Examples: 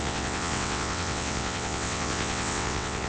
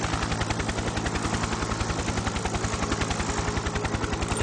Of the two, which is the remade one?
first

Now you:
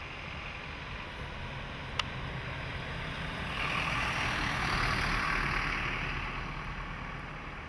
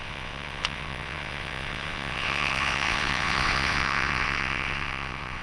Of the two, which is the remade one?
second